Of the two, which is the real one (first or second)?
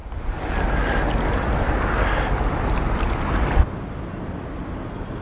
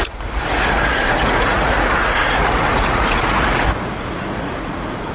first